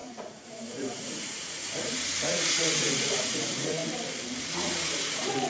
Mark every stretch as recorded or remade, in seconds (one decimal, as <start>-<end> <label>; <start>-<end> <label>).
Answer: 0.0-3.8 remade; 3.8-4.4 recorded; 4.4-5.5 remade